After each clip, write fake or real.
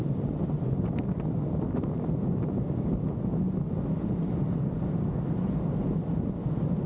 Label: real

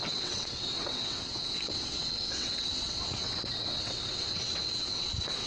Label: fake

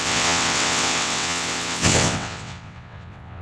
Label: fake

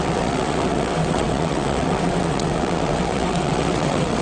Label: fake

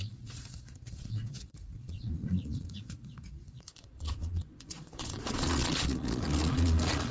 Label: fake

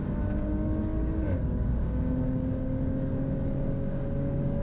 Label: fake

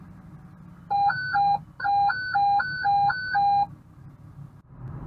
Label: real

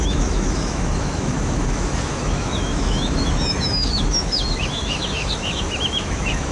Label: fake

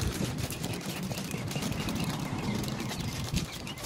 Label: fake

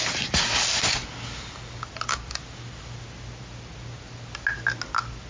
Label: real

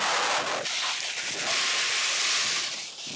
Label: real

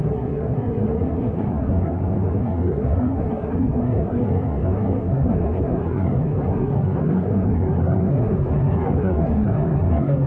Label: fake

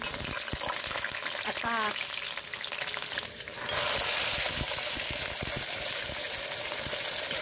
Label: real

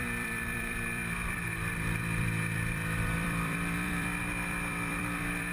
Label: fake